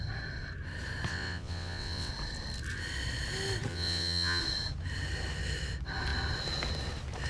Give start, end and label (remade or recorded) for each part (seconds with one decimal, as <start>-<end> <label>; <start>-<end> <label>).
0.0-1.1 recorded; 1.1-2.1 remade; 2.1-3.7 recorded; 3.7-4.4 remade; 4.4-7.3 recorded